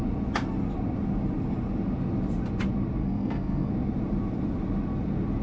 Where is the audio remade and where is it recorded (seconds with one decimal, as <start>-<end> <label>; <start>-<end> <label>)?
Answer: 0.0-3.0 recorded; 3.0-3.7 remade; 3.7-5.4 recorded